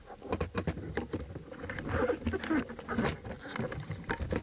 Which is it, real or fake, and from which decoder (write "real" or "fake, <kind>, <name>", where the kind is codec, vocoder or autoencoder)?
real